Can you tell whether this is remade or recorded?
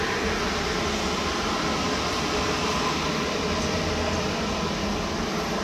recorded